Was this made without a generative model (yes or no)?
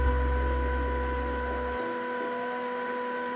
yes